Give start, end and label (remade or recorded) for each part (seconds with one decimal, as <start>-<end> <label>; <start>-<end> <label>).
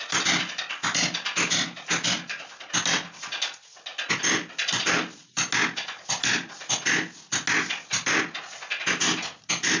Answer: 0.0-9.8 recorded